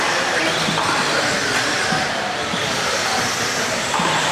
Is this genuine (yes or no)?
yes